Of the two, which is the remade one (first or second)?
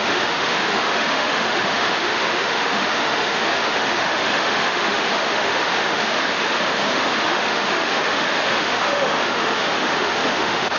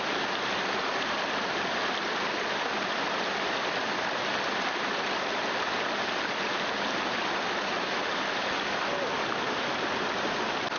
first